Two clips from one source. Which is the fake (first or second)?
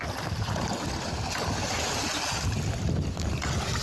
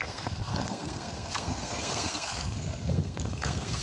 second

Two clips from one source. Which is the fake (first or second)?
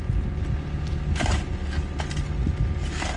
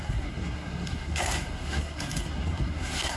second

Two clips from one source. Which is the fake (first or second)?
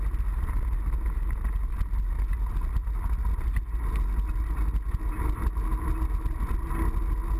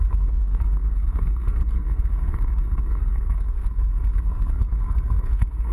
second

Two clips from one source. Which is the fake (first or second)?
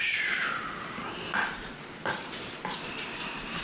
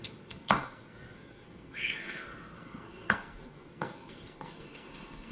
second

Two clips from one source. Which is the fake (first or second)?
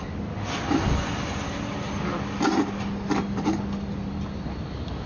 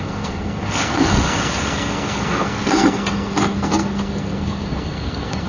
second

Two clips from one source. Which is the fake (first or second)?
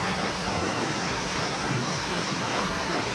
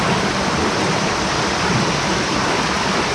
first